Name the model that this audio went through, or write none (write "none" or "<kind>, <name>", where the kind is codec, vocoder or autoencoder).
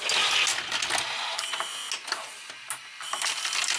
none